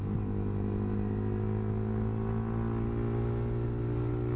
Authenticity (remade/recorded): recorded